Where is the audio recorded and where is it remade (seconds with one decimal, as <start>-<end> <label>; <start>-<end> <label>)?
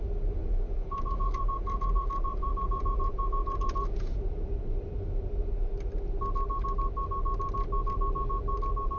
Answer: 0.0-0.4 recorded; 0.4-4.5 remade; 4.5-9.0 recorded